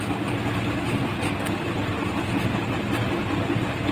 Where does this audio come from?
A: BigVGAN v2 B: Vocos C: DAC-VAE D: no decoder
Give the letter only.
D